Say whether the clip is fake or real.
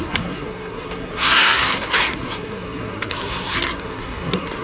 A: fake